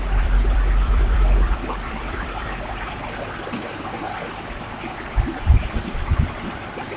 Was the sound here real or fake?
fake